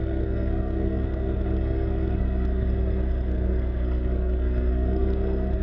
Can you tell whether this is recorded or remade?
remade